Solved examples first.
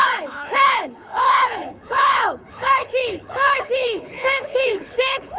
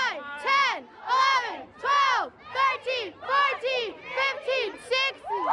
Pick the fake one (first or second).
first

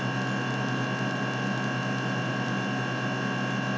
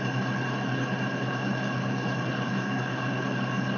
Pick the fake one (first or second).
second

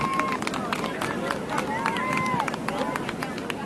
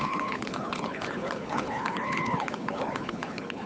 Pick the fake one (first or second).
second